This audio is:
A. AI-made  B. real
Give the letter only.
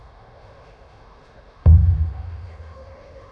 A